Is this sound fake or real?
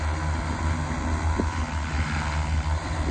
real